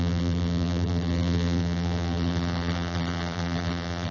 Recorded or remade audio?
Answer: remade